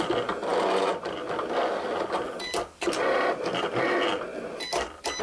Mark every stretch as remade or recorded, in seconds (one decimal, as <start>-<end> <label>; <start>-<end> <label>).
0.0-5.2 recorded